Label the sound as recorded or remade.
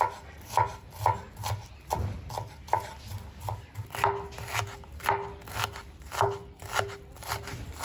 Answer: recorded